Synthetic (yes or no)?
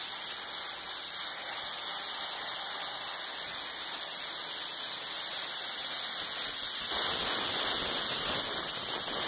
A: no